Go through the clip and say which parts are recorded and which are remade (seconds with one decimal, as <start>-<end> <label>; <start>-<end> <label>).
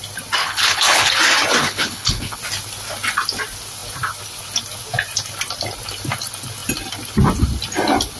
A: 0.0-0.4 recorded; 0.4-1.1 remade; 1.1-1.6 recorded; 1.6-2.4 remade; 2.4-8.2 recorded